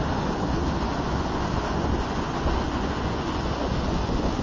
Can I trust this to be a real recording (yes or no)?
no